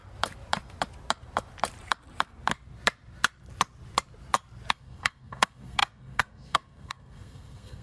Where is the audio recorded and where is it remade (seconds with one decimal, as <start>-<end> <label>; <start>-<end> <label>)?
0.0-4.7 recorded; 4.7-7.8 remade